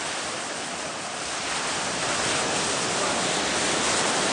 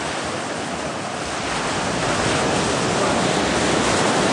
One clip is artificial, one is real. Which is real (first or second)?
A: second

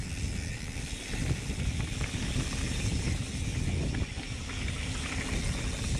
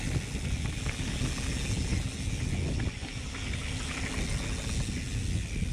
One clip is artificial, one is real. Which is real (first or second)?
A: second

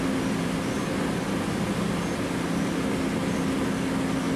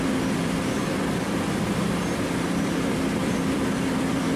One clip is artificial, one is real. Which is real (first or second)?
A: first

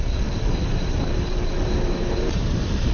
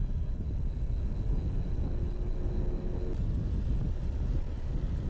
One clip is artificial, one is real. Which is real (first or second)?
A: second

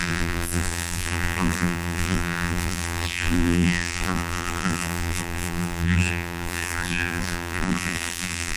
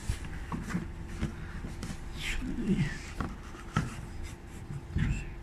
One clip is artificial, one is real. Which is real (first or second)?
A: second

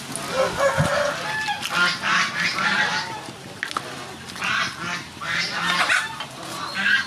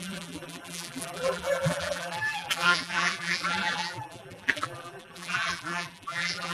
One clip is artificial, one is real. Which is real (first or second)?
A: first